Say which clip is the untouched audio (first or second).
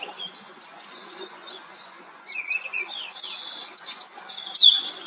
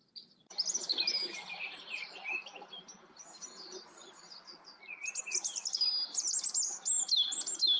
second